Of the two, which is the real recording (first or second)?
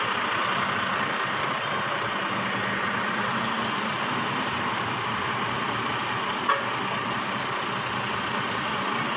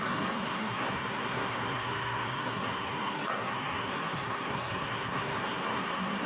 first